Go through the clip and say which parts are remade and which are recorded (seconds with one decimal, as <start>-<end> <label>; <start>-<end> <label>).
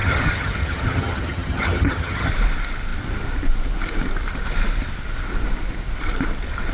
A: 0.0-2.3 remade; 2.3-6.7 recorded